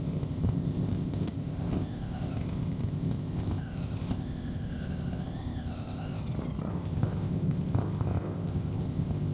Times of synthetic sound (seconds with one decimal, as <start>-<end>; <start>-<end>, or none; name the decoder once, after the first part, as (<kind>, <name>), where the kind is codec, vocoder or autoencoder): 0.0-6.2 (codec, ZipCodec); 6.7-9.3